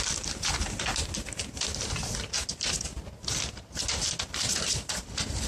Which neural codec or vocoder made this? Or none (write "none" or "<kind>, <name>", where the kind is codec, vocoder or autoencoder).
none